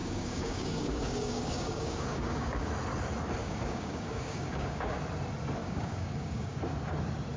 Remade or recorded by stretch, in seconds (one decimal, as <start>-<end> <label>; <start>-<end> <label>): 0.0-2.7 remade; 2.7-3.4 recorded; 3.4-5.0 remade; 5.0-5.6 recorded; 5.6-6.6 remade; 6.6-7.4 recorded